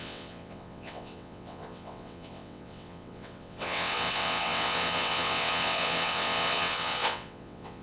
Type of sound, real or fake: fake